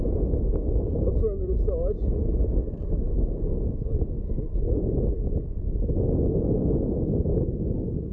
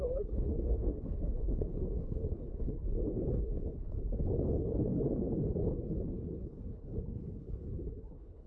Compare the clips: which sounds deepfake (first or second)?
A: second